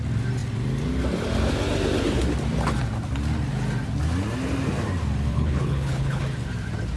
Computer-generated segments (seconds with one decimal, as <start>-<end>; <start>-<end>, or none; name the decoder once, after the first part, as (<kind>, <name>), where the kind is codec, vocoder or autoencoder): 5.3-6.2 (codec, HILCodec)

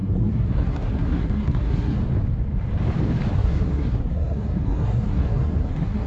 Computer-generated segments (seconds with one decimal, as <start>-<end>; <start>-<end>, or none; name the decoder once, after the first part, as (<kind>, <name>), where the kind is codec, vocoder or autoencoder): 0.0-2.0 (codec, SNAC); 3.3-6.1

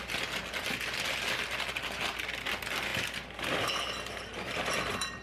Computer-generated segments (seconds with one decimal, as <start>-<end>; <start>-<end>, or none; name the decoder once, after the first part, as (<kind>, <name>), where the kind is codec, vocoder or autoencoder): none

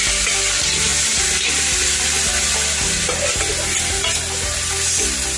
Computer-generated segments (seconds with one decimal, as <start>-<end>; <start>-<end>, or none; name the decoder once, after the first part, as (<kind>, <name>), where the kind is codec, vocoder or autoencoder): none